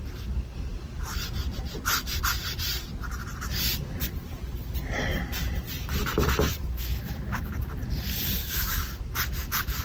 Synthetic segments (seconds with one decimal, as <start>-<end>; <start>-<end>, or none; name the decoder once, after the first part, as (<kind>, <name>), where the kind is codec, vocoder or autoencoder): 6.0-7.5 (autoencoder, DAC-VAE); 8.4-9.0